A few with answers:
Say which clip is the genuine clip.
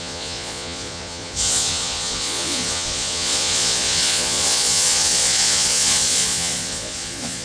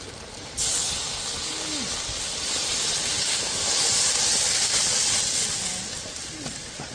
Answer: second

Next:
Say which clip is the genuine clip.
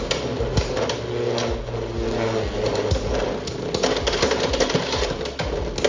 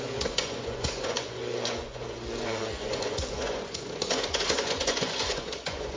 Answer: first